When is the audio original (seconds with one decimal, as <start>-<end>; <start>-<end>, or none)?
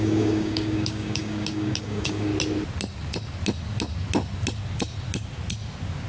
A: 2.3-6.1